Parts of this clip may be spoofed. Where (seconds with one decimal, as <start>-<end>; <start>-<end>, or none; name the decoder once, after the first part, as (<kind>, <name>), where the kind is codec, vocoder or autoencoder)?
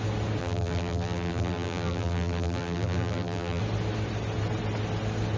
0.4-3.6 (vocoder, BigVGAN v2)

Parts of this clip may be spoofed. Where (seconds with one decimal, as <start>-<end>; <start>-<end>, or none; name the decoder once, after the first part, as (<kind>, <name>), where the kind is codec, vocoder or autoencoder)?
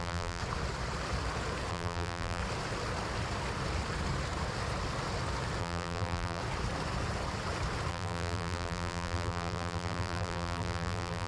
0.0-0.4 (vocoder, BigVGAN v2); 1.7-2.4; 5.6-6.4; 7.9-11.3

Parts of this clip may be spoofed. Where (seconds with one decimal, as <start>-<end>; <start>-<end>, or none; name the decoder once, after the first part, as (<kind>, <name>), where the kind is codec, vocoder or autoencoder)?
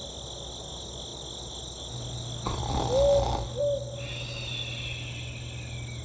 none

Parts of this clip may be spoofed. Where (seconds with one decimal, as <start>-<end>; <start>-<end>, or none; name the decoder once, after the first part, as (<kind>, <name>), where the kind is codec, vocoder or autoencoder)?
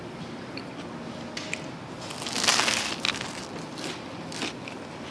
3.7-4.3 (vocoder, BigVGAN v2)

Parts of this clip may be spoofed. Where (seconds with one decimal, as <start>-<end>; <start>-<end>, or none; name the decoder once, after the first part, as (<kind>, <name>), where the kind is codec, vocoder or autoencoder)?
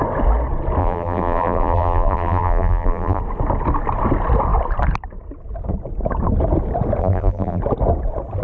0.8-3.2 (vocoder, BigVGAN v2); 7.0-7.6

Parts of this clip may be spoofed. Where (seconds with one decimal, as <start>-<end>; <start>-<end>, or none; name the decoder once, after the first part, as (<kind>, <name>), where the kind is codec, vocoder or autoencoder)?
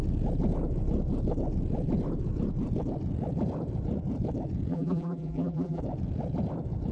4.7-5.8 (vocoder, BigVGAN v2)